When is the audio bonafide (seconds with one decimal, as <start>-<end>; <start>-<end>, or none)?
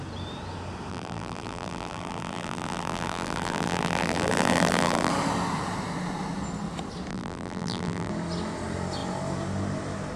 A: 0.0-0.9; 5.1-7.1; 8.1-10.2